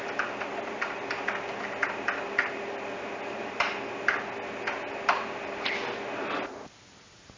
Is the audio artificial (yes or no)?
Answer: no